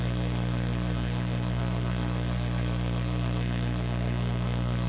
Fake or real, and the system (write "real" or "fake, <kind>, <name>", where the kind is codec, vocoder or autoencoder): fake, codec, SNAC